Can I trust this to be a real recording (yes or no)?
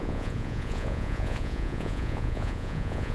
no